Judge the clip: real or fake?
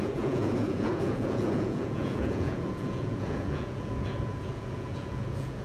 fake